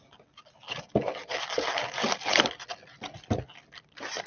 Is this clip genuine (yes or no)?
yes